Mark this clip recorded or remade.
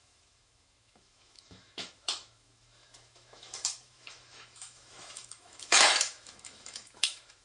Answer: remade